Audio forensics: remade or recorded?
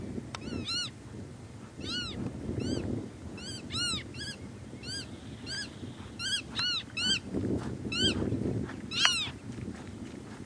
recorded